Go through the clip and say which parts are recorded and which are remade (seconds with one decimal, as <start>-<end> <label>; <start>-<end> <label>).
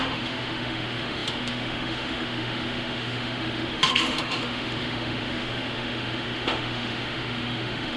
0.0-8.0 remade